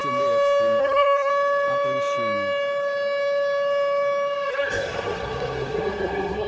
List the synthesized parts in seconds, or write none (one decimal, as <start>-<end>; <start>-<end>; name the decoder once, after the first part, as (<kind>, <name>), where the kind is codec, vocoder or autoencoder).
0.8-1.3 (codec, SNAC); 4.5-6.5